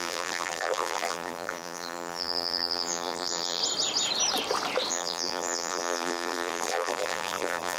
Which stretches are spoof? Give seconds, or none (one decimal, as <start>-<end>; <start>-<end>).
0.0-3.6; 4.9-7.8